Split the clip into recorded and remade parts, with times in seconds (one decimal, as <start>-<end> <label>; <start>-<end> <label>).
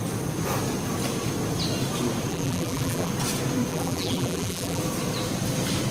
0.0-2.3 recorded; 2.3-3.1 remade; 3.1-3.7 recorded; 3.7-4.8 remade; 4.8-5.9 recorded